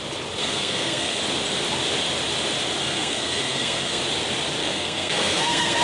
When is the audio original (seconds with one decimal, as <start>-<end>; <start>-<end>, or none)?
0.0-0.4; 1.2-2.8; 4.0-4.6